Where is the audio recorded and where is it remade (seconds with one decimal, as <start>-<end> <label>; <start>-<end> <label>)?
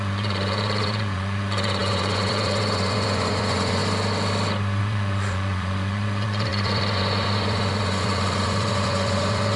0.0-3.8 remade; 3.8-4.8 recorded; 4.8-9.6 remade